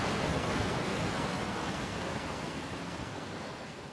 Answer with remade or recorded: remade